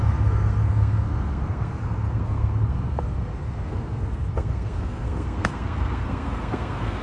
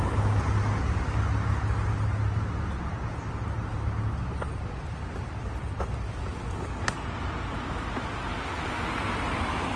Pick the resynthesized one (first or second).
first